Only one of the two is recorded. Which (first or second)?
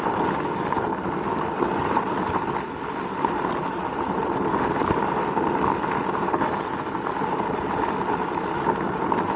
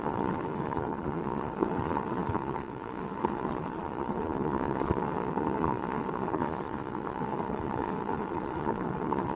first